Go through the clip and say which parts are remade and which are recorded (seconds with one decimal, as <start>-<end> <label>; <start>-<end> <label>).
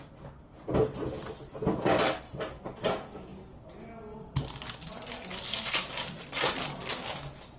0.0-7.6 recorded